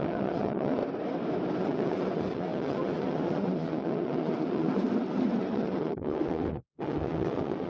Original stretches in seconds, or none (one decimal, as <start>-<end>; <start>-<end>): 0.8-1.6